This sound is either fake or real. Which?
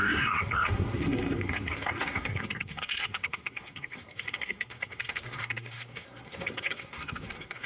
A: fake